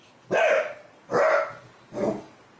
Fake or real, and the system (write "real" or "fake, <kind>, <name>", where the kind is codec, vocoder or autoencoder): real